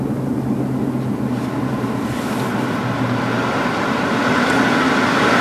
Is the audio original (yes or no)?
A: yes